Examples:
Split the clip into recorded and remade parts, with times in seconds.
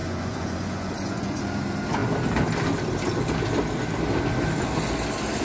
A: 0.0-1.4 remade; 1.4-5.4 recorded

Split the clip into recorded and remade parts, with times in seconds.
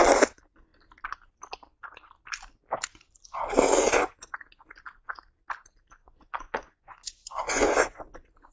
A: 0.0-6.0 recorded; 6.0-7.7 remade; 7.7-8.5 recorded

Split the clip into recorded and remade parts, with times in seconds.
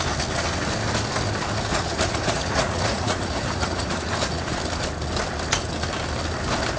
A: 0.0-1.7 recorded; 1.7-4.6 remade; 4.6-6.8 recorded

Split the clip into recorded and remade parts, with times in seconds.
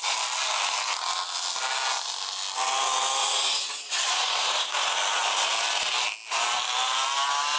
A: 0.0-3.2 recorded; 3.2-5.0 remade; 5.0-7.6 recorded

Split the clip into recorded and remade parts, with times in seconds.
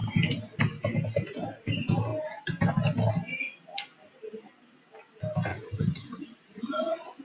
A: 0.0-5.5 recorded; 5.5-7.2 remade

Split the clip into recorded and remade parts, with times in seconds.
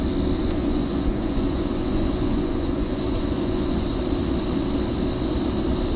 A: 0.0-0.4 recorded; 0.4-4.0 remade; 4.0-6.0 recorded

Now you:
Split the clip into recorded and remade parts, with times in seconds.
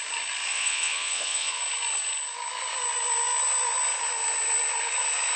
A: 0.0-0.5 recorded; 0.5-1.6 remade; 1.6-5.4 recorded